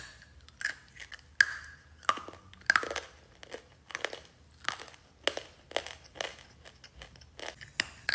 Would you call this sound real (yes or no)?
yes